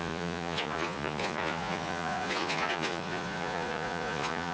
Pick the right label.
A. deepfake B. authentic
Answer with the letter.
A